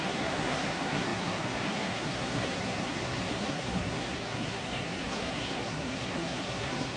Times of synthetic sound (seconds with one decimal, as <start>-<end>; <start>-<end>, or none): 0.0-7.0